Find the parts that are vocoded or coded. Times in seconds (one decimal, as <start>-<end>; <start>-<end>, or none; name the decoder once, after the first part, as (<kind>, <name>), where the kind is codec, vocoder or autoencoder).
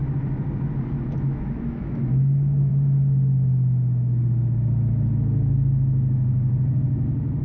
1.0-2.7 (autoencoder, DAC-VAE)